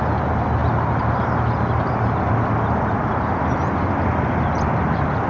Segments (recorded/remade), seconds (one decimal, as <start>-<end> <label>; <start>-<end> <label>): 0.0-5.3 recorded

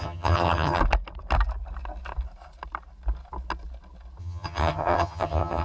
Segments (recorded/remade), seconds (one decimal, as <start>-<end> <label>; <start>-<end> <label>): 0.0-0.8 remade; 0.8-4.2 recorded; 4.2-5.6 remade

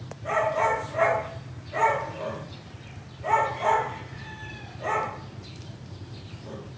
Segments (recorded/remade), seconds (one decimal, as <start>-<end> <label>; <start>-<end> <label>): 0.0-6.8 recorded

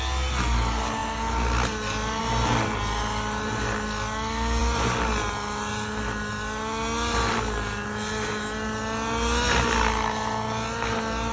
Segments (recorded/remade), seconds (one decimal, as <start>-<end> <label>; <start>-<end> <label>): 0.0-11.3 recorded